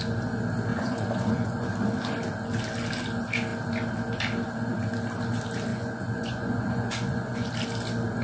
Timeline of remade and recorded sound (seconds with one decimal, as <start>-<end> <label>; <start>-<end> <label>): 0.0-0.7 recorded; 0.7-1.7 remade; 1.7-5.7 recorded; 5.7-7.5 remade; 7.5-8.2 recorded